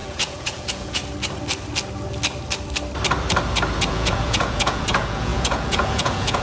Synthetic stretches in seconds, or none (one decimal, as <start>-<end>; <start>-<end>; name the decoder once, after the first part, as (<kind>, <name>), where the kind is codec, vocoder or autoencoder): 0.0-1.0 (vocoder, Vocos); 3.9-6.4